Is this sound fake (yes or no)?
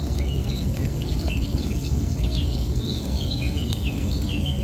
yes